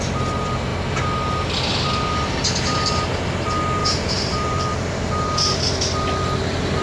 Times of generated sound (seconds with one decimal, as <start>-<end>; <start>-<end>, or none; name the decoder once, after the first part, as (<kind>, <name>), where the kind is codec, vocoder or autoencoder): 3.8-4.8 (vocoder, BigVGAN v2)